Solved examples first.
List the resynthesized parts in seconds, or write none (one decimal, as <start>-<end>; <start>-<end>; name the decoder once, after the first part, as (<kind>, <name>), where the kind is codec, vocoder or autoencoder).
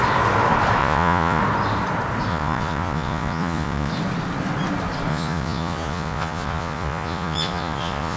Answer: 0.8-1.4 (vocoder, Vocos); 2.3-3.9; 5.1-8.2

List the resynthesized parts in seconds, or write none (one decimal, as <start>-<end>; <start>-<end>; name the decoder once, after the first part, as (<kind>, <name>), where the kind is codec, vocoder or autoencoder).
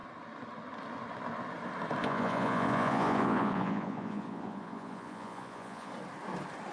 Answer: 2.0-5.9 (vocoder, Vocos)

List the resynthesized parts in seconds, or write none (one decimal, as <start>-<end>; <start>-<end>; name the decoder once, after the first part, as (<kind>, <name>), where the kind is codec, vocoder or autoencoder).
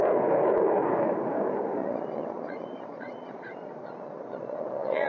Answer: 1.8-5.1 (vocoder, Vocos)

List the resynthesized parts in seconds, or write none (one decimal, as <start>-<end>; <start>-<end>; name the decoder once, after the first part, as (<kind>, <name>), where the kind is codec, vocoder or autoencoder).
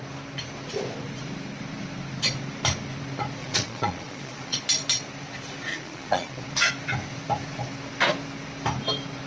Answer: 3.4-4.6 (vocoder, Vocos); 5.7-6.4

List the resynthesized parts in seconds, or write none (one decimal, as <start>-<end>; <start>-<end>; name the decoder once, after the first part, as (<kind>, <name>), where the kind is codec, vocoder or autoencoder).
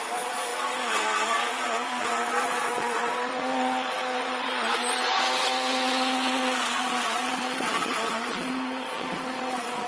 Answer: 0.0-9.9 (vocoder, Vocos)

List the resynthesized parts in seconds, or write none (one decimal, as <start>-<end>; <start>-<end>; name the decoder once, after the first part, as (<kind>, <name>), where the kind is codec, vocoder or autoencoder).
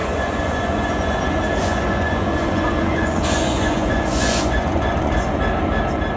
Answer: 0.0-1.2 (vocoder, Vocos); 1.6-5.3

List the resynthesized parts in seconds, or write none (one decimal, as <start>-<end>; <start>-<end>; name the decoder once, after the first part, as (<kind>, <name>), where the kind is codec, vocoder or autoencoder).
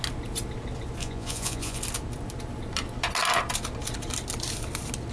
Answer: 1.0-1.8 (vocoder, Vocos)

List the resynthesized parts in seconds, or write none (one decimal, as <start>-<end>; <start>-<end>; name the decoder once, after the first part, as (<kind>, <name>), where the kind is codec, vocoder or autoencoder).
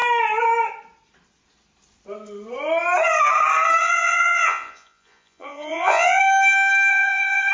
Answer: 3.8-6.2 (vocoder, Vocos); 6.9-7.5